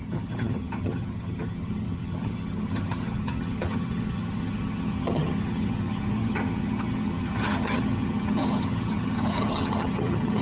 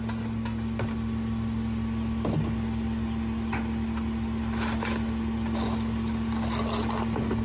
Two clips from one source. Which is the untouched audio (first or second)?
second